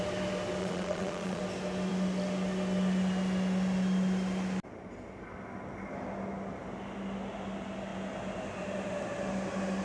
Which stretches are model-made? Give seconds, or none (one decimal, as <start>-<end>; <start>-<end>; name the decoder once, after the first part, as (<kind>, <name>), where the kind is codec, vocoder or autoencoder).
0.6-1.4 (vocoder, Vocos)